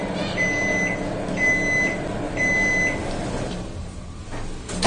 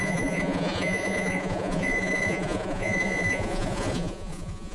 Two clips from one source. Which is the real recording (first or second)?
first